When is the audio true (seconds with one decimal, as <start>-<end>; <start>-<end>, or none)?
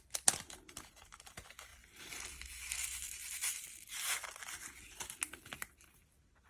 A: 0.0-1.7; 5.1-6.5